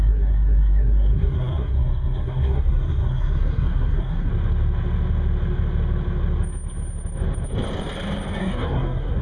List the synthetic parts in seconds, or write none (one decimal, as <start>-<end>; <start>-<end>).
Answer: 0.0-4.3; 8.4-9.2